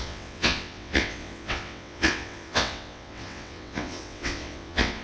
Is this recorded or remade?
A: remade